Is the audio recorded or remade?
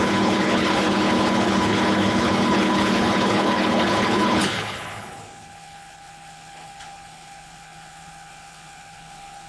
remade